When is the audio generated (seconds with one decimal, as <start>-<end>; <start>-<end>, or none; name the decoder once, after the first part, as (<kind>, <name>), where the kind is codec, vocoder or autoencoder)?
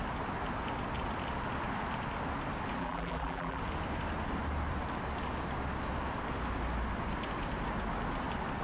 2.8-3.6 (vocoder, BigVGAN v2)